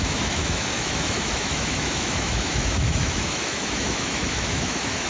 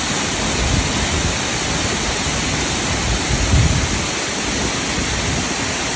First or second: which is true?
second